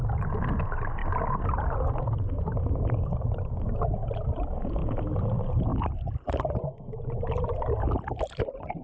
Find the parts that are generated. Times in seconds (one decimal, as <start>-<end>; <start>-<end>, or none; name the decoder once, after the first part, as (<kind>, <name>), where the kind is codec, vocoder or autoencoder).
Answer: 1.0-3.5 (vocoder, BigVGAN v2); 5.7-6.3